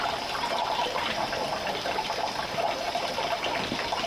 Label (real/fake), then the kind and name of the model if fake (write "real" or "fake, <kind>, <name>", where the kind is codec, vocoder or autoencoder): real